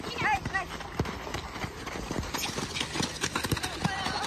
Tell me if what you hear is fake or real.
real